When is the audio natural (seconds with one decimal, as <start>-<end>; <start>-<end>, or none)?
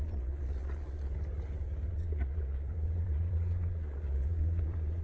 1.1-1.9